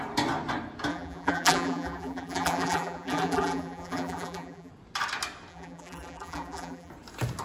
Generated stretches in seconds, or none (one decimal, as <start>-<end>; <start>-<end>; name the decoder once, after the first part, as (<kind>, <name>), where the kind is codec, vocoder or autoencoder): 0.9-4.7 (vocoder, BigVGAN v2); 5.5-6.9